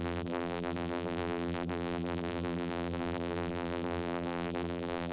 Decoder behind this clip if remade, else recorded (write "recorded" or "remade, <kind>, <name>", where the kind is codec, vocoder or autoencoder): remade, vocoder, BigVGAN v2